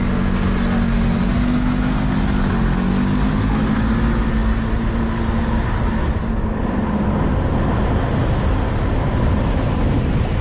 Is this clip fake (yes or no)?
no